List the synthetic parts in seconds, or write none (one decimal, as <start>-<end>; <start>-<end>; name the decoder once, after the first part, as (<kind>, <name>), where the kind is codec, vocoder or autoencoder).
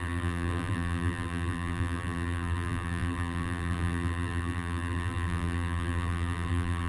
0.0-6.9 (vocoder, BigVGAN v2)